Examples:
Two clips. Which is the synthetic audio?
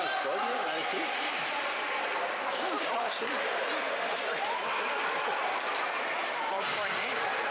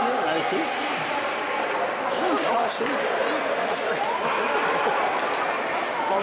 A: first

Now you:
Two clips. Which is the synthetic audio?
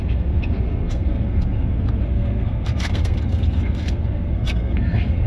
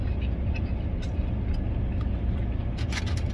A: first